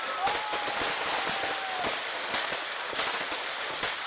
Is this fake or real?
real